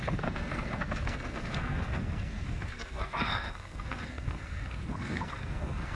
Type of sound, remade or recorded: remade